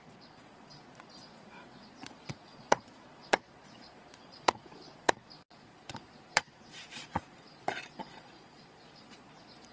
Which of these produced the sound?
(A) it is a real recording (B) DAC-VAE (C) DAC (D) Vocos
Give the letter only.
D